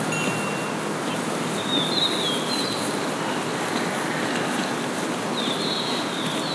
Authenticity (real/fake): real